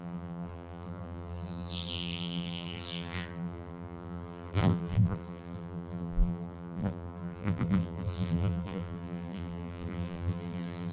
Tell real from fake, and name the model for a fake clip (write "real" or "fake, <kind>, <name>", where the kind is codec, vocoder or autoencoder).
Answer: fake, vocoder, BigVGAN v2